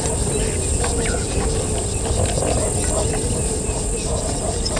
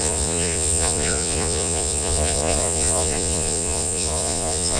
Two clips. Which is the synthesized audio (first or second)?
second